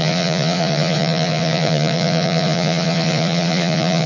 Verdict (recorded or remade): remade